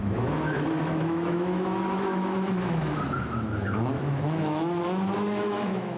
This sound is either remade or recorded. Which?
remade